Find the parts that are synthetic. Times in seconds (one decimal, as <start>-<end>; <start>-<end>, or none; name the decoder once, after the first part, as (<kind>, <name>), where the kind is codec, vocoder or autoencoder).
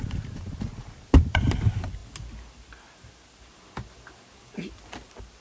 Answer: 0.0-2.0 (vocoder, BigVGAN v2)